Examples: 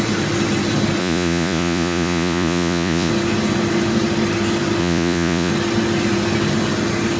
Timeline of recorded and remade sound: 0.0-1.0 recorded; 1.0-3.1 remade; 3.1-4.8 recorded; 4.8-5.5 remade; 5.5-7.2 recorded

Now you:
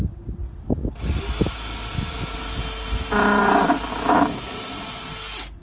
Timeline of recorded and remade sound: 0.0-3.9 recorded; 3.9-4.6 remade; 4.6-5.6 recorded

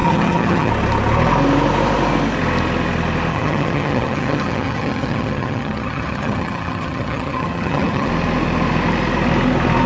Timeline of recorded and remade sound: 0.0-0.7 remade; 0.7-3.3 recorded; 3.3-8.1 remade; 8.1-9.9 recorded

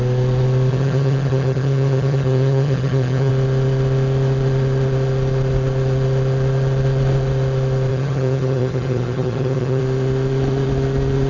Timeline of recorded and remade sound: 0.0-0.7 recorded; 0.7-3.3 remade; 3.3-7.9 recorded; 7.9-9.8 remade; 9.8-11.3 recorded

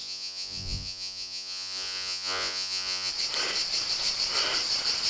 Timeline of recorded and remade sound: 0.0-3.1 remade; 3.1-5.1 recorded